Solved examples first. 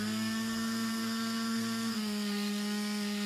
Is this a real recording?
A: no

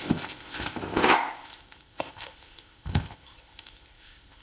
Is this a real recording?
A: no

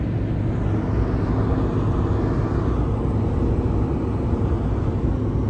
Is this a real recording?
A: yes